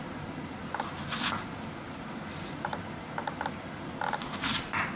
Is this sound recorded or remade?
recorded